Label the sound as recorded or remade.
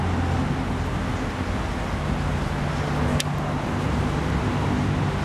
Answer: recorded